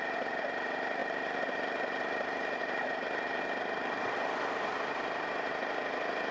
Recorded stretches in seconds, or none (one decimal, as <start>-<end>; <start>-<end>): 1.0-3.4